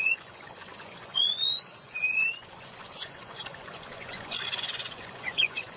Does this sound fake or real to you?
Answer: fake